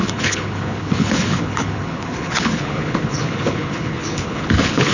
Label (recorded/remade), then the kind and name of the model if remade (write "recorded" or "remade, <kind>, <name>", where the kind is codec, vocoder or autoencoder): remade, codec, HILCodec